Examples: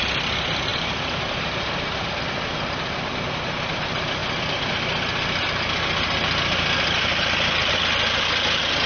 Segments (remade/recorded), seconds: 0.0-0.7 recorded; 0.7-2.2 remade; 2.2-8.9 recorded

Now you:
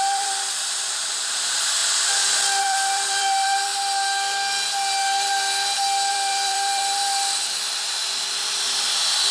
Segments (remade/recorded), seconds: 0.0-1.8 remade; 1.8-2.6 recorded; 2.6-3.7 remade; 3.7-6.1 recorded; 6.1-8.0 remade; 8.0-9.3 recorded

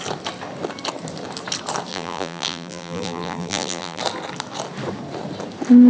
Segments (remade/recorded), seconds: 0.0-1.9 recorded; 1.9-4.0 remade; 4.0-5.9 recorded

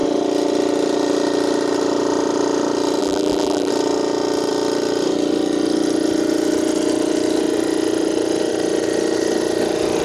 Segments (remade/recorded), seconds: 0.0-3.0 recorded; 3.0-3.7 remade; 3.7-10.0 recorded